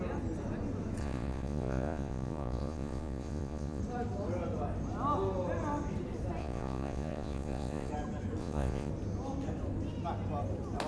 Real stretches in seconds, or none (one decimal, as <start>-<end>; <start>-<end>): 0.0-1.0; 3.8-6.4; 7.9-8.4; 8.9-10.9